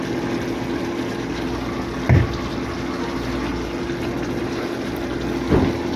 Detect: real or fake real